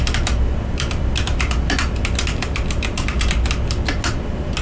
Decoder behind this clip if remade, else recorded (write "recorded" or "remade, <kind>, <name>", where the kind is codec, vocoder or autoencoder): recorded